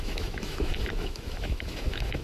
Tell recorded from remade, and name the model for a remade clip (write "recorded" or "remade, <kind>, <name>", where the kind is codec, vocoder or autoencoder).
remade, autoencoder, DAC-VAE